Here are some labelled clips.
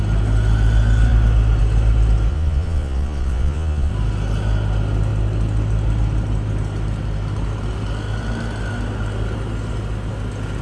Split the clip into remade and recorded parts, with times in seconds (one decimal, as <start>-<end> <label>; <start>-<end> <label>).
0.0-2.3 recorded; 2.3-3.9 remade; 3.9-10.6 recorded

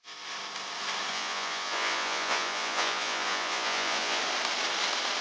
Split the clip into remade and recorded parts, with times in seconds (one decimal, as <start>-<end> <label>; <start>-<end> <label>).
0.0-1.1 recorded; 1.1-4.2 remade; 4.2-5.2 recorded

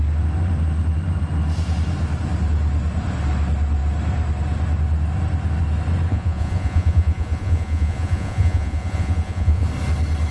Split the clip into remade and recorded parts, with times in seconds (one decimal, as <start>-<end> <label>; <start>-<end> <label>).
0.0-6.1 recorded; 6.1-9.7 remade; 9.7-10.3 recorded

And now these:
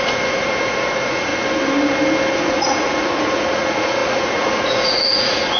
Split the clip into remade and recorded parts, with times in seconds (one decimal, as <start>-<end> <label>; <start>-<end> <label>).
0.0-1.3 remade; 1.3-2.4 recorded; 2.4-5.6 remade

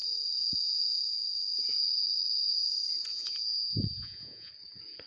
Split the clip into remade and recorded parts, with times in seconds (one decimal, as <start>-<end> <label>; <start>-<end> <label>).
0.0-3.1 recorded; 3.1-4.5 remade; 4.5-5.1 recorded

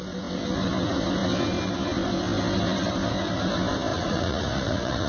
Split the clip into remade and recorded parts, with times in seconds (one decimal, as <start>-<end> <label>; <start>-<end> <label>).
0.0-3.9 recorded; 3.9-5.1 remade

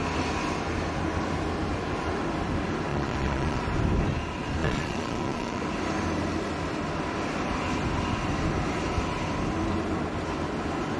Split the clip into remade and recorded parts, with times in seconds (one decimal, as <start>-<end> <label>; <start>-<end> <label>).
0.0-2.9 recorded; 2.9-3.6 remade; 3.6-4.6 recorded; 4.6-5.6 remade; 5.6-11.0 recorded